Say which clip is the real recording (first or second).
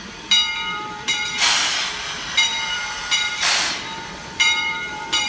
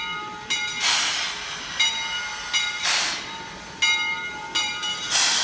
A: second